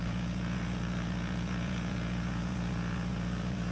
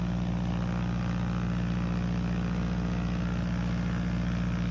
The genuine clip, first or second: second